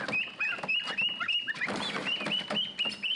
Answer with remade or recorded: recorded